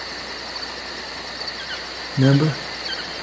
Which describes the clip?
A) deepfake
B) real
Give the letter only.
B